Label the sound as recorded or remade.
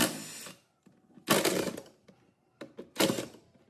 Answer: recorded